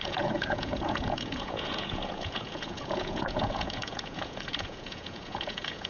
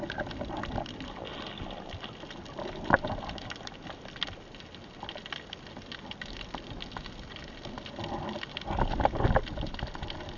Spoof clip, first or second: first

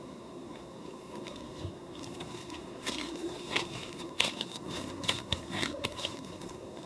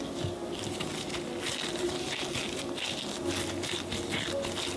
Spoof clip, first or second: first